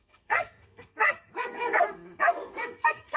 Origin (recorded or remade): remade